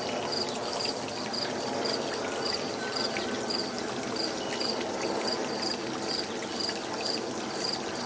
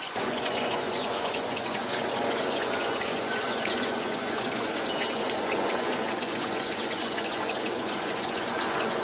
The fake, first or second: second